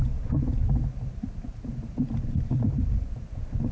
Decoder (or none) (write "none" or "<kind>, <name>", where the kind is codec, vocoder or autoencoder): none